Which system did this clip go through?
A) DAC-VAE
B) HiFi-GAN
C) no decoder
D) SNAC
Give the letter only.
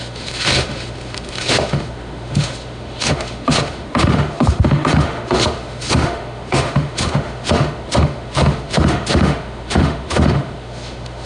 A